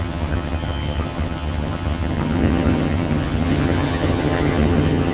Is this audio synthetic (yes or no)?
yes